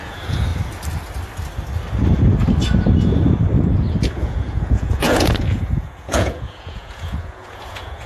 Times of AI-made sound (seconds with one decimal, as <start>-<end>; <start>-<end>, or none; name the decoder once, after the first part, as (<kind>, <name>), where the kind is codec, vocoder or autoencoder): 0.0-0.5 (vocoder, Vocos); 4.1-8.1